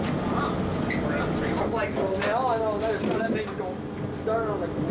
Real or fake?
real